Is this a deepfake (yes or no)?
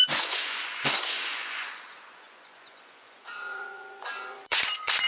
yes